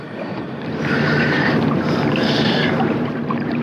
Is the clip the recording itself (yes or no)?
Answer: no